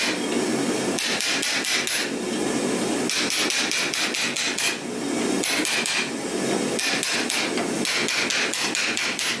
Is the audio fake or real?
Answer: real